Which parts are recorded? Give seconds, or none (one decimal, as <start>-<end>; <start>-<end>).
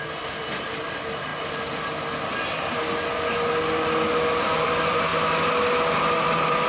1.3-4.4; 5.1-5.9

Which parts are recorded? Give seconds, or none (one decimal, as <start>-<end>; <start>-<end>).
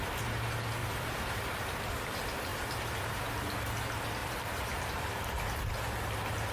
0.0-0.8; 2.0-2.5; 3.2-4.2; 5.1-6.5